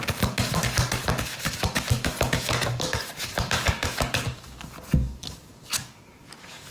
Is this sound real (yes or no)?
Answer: no